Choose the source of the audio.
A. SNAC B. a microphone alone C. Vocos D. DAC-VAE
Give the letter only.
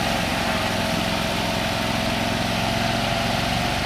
B